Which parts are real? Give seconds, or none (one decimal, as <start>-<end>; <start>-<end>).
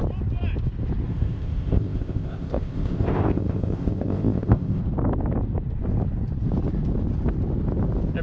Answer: 0.0-1.1; 4.8-8.2